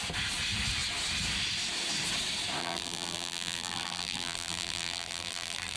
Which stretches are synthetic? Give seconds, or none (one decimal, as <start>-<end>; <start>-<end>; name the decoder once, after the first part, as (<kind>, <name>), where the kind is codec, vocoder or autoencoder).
2.6-5.8 (vocoder, BigVGAN v2)

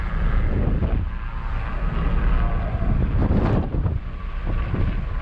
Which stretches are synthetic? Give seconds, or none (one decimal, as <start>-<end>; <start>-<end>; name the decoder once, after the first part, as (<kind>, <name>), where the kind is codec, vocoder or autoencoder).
3.2-5.2 (vocoder, BigVGAN v2)

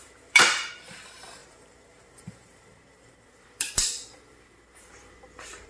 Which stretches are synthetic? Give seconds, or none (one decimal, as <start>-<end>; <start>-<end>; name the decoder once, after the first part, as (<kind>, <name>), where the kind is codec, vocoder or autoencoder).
0.0-5.7 (vocoder, BigVGAN v2)

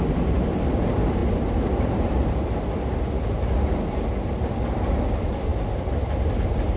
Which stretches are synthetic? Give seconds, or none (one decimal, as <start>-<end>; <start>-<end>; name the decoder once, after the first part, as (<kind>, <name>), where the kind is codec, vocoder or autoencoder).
0.0-1.2 (vocoder, BigVGAN v2); 4.3-6.8

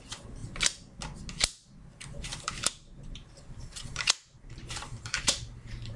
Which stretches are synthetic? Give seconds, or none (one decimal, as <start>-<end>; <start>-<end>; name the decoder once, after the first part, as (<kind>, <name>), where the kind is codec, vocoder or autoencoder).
2.3-6.0 (vocoder, BigVGAN v2)

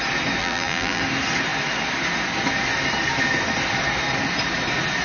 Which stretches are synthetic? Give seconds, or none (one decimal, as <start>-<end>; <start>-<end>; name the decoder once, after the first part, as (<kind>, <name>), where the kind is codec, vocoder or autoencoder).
0.4-1.0 (vocoder, BigVGAN v2)

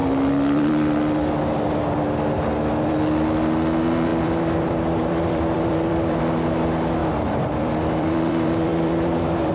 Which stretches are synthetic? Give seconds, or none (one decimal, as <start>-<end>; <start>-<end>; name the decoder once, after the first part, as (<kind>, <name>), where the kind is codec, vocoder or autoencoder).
4.1-6.2 (vocoder, BigVGAN v2); 7.0-9.5